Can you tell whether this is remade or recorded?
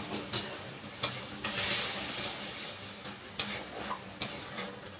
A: recorded